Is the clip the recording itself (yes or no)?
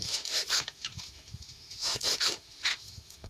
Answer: no